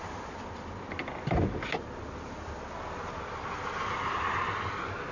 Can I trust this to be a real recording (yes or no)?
yes